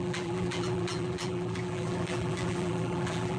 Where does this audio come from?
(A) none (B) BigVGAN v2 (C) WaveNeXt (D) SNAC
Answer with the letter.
B